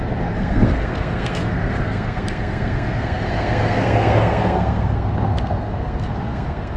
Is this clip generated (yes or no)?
yes